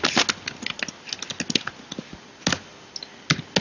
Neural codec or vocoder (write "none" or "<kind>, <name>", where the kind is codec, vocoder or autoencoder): none